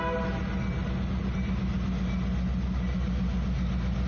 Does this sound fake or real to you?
real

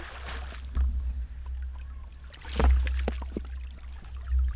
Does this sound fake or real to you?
real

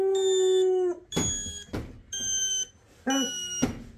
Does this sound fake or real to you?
real